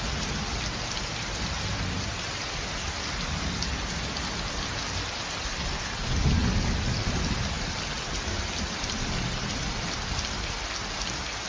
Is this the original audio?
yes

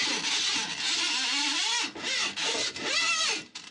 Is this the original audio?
yes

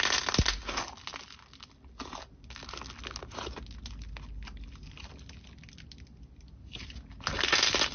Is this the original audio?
yes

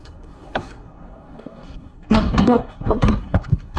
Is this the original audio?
no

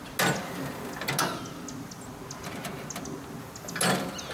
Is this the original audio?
yes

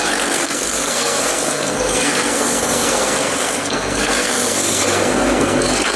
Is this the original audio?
no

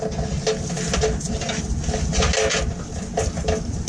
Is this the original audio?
yes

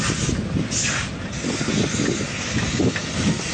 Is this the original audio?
yes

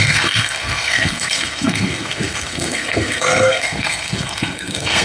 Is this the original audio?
no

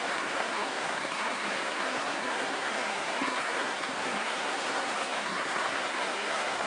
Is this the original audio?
no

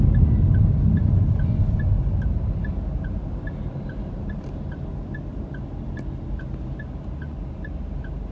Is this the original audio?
yes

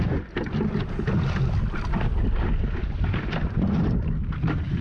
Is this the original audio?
yes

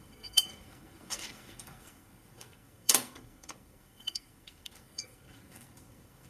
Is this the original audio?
no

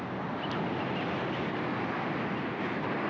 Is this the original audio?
yes